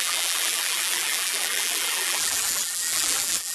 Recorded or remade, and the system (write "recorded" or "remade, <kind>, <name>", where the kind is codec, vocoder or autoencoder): remade, vocoder, BigVGAN v2